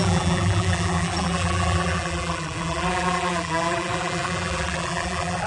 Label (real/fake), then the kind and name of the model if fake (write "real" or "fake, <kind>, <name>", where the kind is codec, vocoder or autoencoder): fake, vocoder, BigVGAN v2